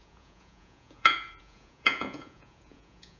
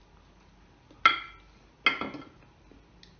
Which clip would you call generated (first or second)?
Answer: first